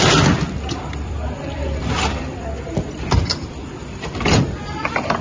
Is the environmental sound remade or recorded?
remade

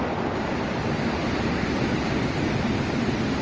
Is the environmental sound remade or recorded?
recorded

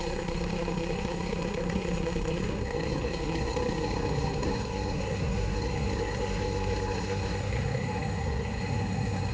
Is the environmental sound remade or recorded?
remade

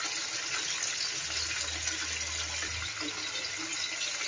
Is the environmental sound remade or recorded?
recorded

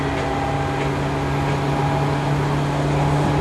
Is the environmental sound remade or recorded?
recorded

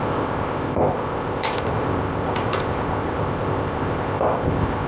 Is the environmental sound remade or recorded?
remade